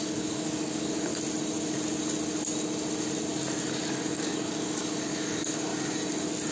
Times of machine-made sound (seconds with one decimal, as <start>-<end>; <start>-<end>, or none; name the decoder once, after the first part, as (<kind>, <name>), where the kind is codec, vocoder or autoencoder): 0.0-1.1 (codec, DAC); 3.9-5.7

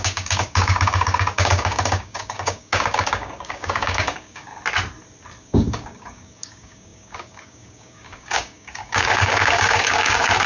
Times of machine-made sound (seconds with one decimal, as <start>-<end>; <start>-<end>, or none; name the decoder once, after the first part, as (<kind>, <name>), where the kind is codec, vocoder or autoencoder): 0.0-4.5 (codec, DAC); 5.4-10.5

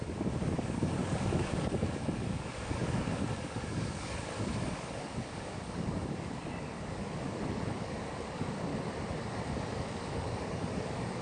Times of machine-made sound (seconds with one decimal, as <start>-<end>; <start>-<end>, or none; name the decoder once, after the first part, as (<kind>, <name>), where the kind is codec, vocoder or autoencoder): 0.0-8.7 (codec, DAC); 9.3-11.2

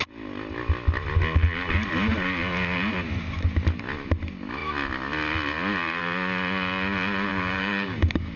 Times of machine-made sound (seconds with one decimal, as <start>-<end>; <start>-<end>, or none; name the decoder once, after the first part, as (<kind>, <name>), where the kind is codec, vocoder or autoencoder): 7.3-8.4 (codec, DAC)

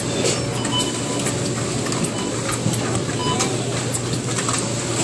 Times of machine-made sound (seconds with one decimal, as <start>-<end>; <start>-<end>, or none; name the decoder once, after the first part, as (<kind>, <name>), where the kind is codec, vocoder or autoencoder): none